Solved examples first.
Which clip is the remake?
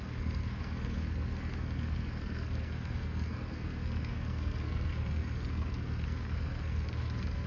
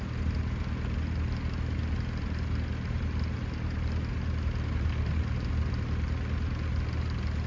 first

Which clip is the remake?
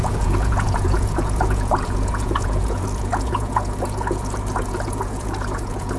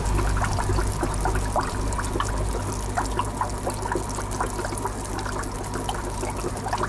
first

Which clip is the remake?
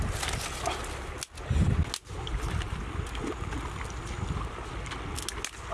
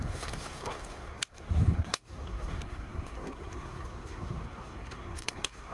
second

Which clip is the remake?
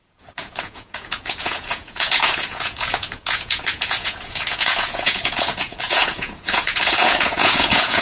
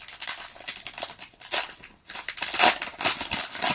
first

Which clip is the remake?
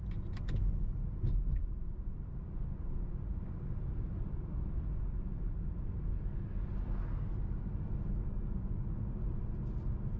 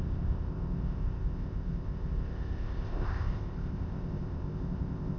second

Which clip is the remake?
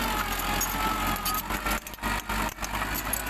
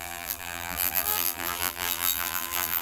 second